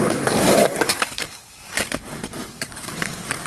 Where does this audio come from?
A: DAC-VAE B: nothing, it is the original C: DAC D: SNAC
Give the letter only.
C